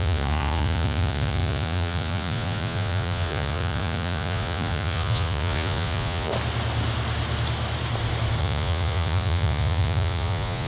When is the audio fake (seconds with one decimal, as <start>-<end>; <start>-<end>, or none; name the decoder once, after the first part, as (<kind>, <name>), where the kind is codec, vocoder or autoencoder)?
0.0-6.3 (vocoder, Vocos); 8.4-10.7